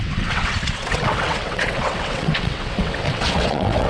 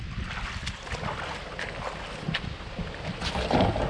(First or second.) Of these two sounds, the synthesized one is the first